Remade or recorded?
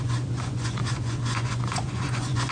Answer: remade